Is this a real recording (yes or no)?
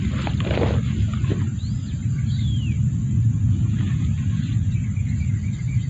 yes